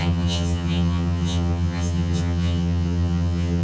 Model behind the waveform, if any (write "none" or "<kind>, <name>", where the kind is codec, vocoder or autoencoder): vocoder, HiFi-GAN